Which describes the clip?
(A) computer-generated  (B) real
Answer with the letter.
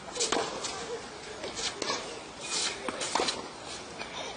B